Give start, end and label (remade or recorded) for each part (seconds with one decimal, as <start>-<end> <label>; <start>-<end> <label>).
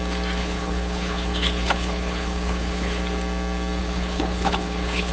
0.0-0.4 recorded; 0.4-3.0 remade; 3.0-3.8 recorded; 3.8-5.1 remade